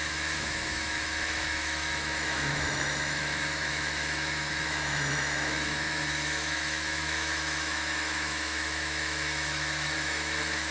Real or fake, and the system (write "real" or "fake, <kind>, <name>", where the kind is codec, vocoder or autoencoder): fake, autoencoder, DAC-VAE